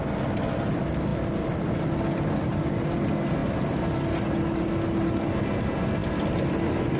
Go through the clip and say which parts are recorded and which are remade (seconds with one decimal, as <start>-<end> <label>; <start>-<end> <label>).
0.0-7.0 recorded